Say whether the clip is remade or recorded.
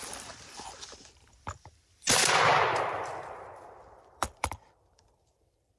remade